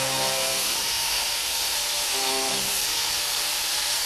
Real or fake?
fake